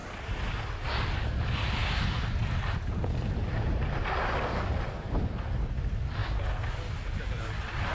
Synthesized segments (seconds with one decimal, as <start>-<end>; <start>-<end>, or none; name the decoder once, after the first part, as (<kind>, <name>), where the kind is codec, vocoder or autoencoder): none